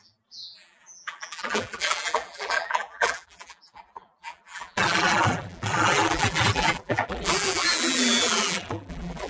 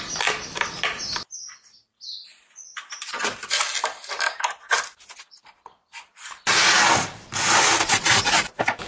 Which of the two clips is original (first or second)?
second